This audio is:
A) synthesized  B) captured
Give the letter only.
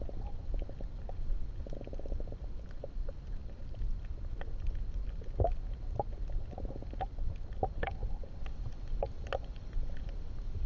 B